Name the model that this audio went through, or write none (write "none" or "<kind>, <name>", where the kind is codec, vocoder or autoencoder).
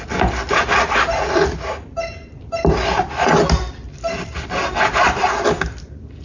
none